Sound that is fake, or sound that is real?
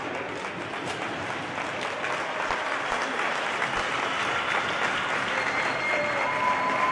real